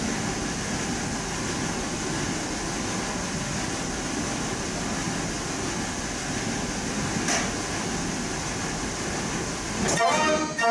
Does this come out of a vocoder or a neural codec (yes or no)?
no